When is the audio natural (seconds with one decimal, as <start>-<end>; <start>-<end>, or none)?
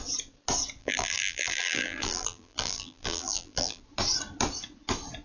0.0-0.8; 3.8-5.2